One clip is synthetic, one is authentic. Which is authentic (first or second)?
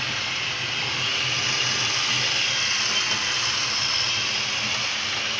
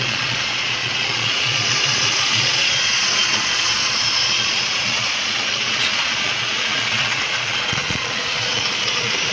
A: first